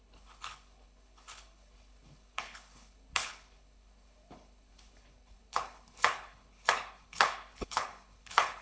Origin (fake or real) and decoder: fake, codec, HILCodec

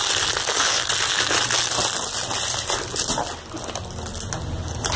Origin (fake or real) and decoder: real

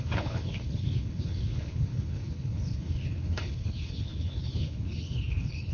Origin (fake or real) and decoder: fake, codec, HILCodec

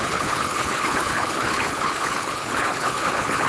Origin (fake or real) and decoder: fake, codec, HILCodec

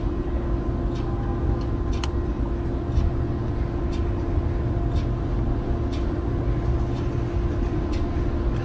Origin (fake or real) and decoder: real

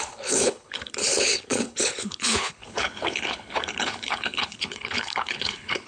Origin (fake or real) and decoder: fake, codec, HILCodec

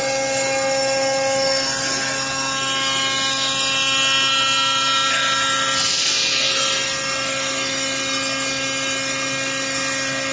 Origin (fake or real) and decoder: real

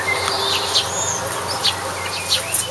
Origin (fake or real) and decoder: real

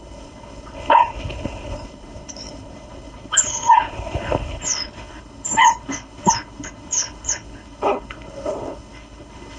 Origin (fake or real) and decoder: fake, codec, HILCodec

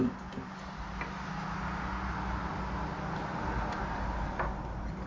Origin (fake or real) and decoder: real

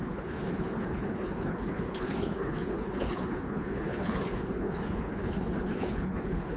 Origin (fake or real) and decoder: fake, codec, HILCodec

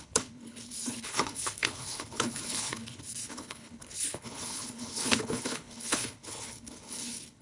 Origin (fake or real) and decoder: fake, codec, HILCodec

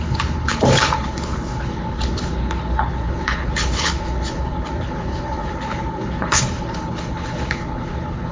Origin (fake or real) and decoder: fake, codec, HILCodec